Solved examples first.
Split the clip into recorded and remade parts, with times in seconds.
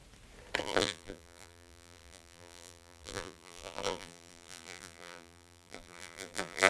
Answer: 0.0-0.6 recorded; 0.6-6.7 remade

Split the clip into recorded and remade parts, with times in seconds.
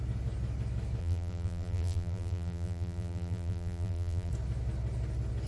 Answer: 0.0-1.0 recorded; 1.0-4.3 remade; 4.3-5.5 recorded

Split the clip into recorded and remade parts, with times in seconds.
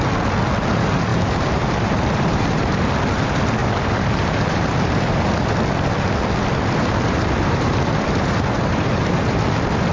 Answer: 0.0-1.1 recorded; 1.1-2.9 remade; 2.9-3.6 recorded; 3.6-4.9 remade; 4.9-6.8 recorded; 6.8-9.4 remade; 9.4-9.9 recorded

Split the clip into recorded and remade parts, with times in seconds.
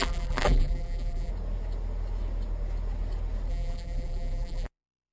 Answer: 0.0-1.3 remade; 1.3-3.5 recorded; 3.5-5.1 remade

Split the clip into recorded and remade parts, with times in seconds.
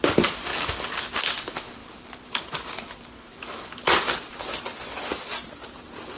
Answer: 0.0-1.8 recorded; 1.8-2.4 remade; 2.4-3.3 recorded; 3.3-3.9 remade; 3.9-6.2 recorded